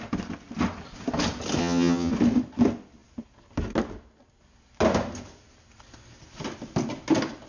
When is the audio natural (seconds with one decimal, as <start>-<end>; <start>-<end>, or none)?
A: 0.0-1.6; 2.1-7.5